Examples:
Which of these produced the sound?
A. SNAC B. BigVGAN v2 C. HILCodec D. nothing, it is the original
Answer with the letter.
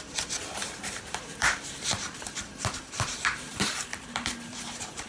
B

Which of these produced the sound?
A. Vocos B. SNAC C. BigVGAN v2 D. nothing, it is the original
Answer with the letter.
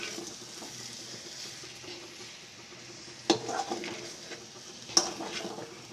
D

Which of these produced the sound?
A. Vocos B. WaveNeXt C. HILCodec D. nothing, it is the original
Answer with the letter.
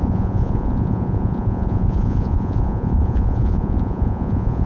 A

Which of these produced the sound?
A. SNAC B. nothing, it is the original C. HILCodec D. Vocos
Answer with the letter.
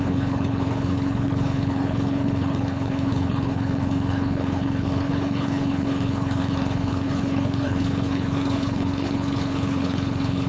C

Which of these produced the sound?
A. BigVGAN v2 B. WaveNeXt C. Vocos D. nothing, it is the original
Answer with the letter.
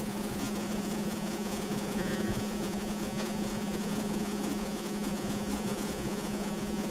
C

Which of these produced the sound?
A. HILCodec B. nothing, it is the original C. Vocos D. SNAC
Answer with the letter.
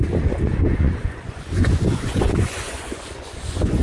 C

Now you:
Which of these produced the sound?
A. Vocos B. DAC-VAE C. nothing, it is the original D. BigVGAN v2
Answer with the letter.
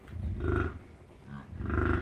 C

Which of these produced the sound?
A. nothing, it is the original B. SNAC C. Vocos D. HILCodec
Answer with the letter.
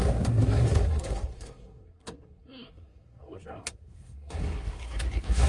B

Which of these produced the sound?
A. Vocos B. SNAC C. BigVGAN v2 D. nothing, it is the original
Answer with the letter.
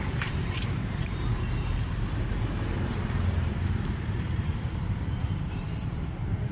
C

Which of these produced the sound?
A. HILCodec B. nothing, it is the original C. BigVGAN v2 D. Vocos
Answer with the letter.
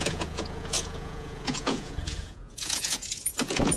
D